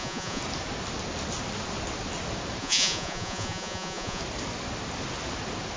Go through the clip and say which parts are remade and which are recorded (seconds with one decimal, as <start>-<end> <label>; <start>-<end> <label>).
0.0-0.4 remade; 0.4-2.6 recorded; 2.6-4.2 remade; 4.2-5.8 recorded